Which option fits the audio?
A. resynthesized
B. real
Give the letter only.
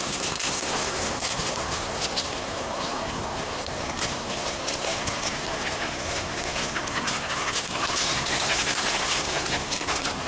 A